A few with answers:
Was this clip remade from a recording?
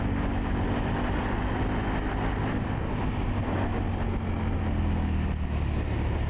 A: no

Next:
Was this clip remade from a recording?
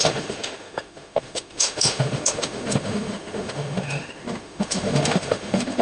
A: yes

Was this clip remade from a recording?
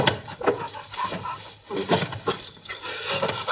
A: no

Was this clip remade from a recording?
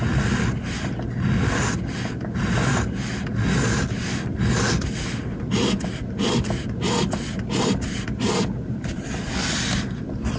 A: no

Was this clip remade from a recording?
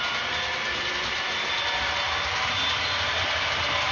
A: no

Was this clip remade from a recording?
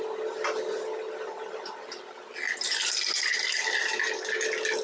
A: no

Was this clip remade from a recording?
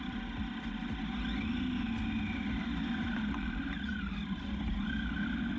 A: no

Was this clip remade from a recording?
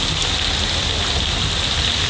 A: no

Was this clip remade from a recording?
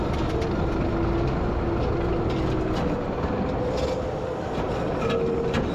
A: no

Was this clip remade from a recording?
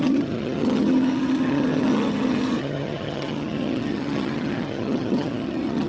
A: yes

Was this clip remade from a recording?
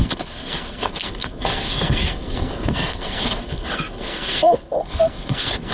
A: yes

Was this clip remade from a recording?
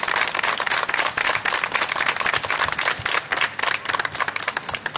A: no